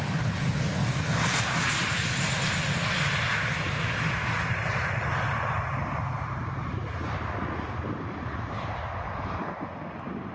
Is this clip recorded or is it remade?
recorded